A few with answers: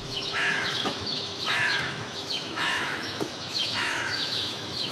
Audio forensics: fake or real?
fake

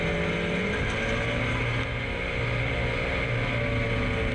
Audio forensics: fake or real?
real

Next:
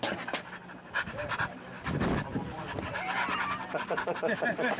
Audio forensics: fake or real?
real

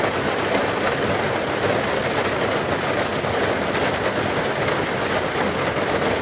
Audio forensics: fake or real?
real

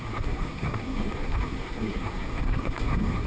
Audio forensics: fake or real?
fake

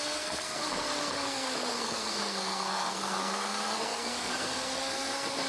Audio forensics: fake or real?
fake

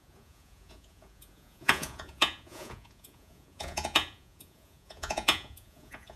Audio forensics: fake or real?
fake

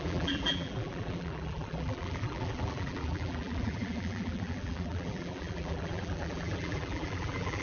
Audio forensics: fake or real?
fake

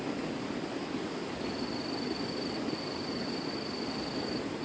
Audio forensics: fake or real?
fake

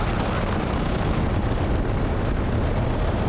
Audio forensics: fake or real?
real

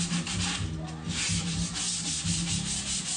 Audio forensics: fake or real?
real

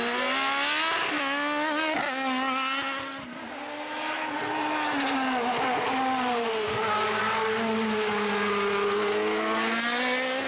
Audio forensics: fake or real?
real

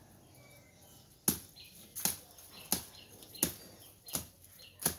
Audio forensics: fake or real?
real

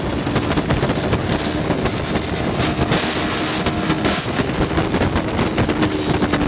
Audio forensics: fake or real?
real